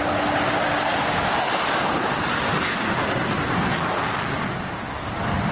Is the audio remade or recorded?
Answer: recorded